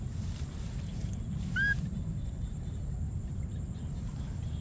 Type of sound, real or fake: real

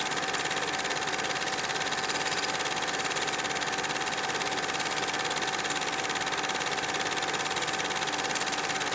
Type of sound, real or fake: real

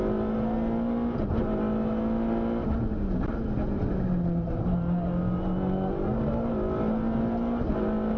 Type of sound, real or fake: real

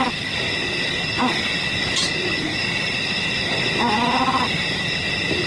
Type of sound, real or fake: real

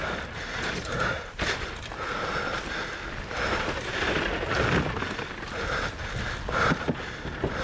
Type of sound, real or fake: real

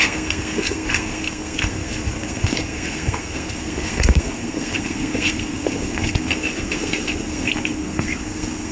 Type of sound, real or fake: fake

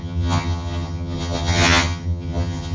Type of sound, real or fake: fake